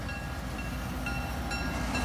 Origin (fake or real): real